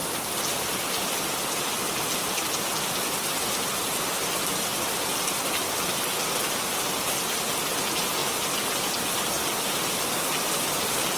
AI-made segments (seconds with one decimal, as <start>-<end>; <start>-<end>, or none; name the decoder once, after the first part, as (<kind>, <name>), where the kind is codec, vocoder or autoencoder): 0.0-1.3 (vocoder, BigVGAN v2)